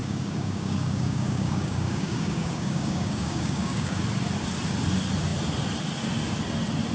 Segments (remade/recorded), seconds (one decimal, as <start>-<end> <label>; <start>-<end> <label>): 0.0-4.0 remade; 4.0-6.9 recorded